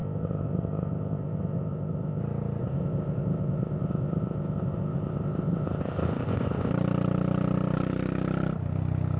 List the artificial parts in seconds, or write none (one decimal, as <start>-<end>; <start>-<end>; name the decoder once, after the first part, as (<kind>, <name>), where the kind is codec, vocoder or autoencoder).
0.0-2.2 (codec, ZipCodec); 2.6-6.7